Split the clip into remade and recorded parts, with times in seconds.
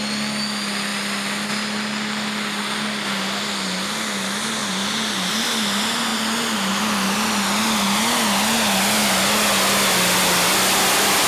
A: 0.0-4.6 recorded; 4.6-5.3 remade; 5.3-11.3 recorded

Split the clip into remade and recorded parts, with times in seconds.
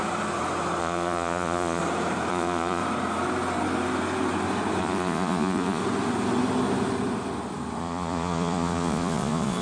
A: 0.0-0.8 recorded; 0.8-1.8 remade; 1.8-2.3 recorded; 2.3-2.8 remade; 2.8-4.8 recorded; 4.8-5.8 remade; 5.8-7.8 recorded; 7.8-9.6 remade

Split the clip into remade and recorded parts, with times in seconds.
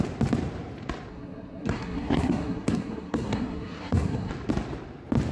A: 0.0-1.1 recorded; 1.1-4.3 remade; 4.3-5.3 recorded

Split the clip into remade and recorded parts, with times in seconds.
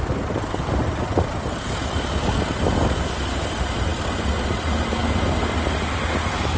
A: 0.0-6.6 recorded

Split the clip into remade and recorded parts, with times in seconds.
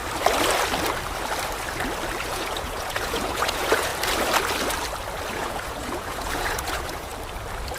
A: 0.0-2.2 recorded; 2.2-3.9 remade; 3.9-5.3 recorded; 5.3-7.1 remade; 7.1-7.8 recorded